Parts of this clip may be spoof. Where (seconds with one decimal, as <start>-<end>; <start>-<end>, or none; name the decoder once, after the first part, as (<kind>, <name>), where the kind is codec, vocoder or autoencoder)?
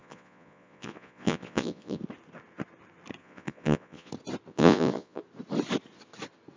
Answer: 0.0-2.0 (vocoder, Vocos); 3.2-4.1; 4.5-5.2